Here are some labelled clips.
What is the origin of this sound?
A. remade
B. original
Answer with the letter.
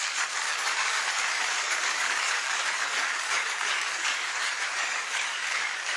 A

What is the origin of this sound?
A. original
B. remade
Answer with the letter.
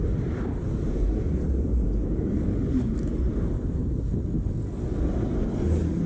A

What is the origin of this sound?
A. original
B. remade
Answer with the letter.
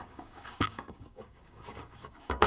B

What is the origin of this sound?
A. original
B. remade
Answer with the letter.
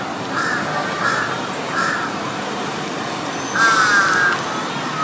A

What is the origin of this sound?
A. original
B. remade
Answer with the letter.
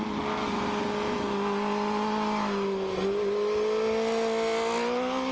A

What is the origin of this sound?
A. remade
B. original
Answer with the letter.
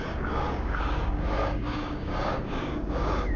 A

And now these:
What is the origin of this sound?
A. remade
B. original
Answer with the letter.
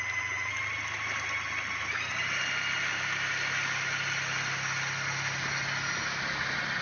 B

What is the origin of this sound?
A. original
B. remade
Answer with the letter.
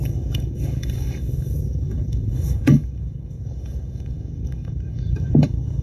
B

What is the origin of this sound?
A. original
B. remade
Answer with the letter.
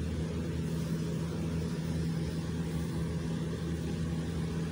A